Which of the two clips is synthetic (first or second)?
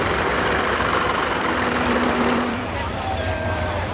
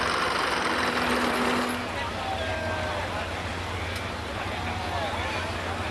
first